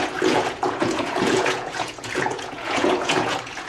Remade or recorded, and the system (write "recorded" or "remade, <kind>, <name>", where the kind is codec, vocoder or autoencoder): remade, vocoder, Vocos